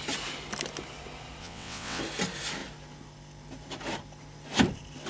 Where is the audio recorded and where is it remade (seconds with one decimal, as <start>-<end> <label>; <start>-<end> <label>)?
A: 0.0-1.4 recorded; 1.4-2.0 remade; 2.0-5.1 recorded